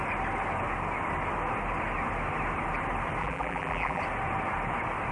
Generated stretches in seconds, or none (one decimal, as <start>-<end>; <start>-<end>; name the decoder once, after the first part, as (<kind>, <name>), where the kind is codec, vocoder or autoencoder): 3.2-4.0 (vocoder, BigVGAN v2)